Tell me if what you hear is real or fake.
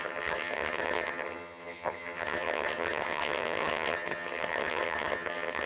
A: fake